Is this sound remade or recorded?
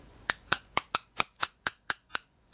remade